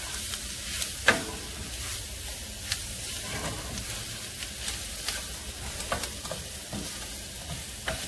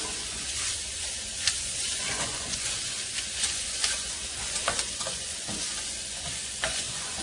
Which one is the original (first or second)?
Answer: first